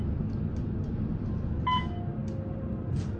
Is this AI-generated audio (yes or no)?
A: no